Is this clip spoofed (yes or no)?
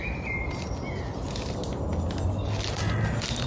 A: no